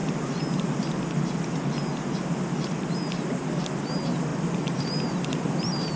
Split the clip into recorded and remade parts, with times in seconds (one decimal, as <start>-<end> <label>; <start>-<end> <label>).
0.0-4.3 recorded; 4.3-6.0 remade